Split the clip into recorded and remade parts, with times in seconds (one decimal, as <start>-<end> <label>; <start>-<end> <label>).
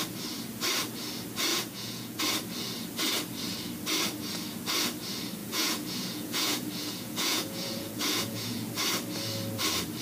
0.0-1.5 recorded; 1.5-2.2 remade; 2.2-5.4 recorded; 5.4-8.7 remade; 8.7-10.0 recorded